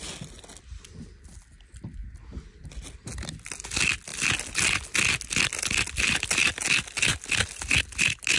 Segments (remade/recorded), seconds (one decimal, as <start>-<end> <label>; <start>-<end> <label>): 0.0-8.4 recorded